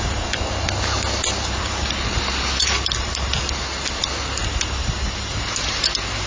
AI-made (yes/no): no